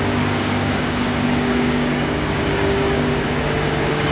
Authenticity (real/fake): fake